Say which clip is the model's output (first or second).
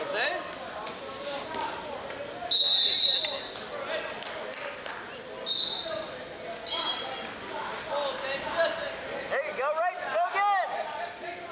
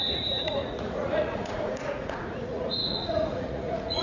second